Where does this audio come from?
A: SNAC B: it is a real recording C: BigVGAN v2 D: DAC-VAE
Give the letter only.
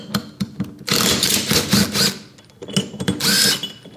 B